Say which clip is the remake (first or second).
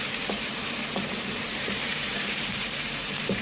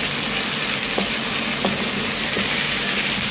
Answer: first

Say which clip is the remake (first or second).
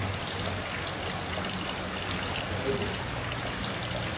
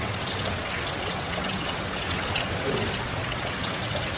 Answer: second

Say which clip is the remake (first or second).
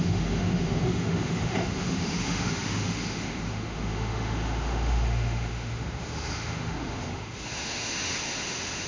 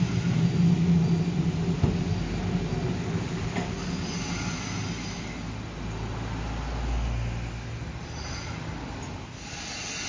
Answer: first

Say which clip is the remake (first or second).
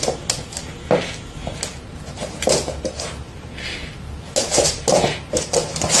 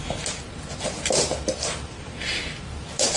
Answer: second